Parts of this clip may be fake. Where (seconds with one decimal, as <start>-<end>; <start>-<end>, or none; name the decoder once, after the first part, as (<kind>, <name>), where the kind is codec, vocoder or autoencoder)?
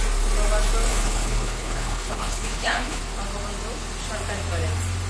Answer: 0.9-3.0 (codec, HILCodec)